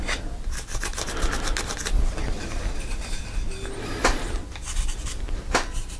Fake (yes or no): no